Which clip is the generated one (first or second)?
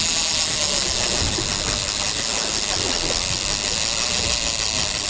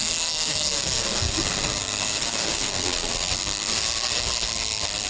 second